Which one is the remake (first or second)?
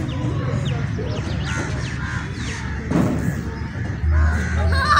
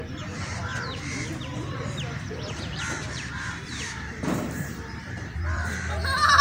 second